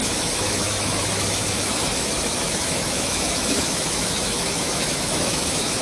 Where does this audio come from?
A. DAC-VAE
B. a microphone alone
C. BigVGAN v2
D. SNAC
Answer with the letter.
A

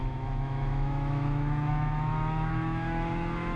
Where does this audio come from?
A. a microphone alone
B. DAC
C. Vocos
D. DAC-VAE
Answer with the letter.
D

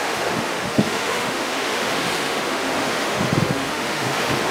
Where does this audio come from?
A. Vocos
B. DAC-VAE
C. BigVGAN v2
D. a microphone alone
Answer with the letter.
B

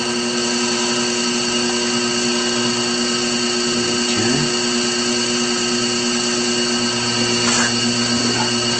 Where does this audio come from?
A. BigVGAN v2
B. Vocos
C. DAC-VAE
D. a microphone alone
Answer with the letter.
D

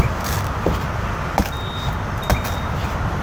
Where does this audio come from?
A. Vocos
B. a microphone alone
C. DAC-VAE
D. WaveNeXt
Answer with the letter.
B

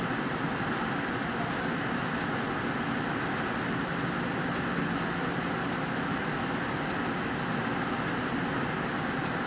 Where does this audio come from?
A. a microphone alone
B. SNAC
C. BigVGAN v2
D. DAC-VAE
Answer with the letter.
A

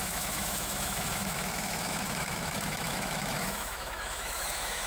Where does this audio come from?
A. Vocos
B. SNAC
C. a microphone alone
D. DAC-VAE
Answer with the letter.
D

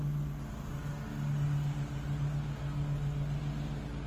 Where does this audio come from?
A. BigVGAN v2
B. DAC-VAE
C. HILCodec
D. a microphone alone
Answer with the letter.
D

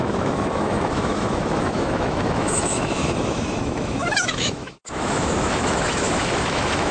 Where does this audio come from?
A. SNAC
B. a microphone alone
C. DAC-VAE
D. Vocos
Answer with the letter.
C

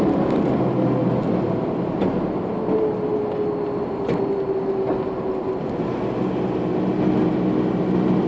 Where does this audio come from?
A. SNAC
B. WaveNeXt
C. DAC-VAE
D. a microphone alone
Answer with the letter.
D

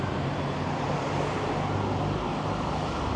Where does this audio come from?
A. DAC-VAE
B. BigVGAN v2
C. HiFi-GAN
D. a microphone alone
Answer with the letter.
D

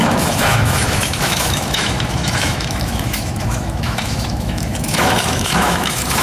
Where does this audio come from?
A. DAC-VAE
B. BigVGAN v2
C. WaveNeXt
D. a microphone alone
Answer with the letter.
A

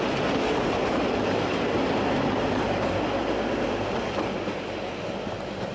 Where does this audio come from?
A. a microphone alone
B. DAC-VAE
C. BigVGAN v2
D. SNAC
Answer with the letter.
A